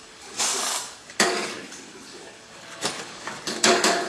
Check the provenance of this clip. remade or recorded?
remade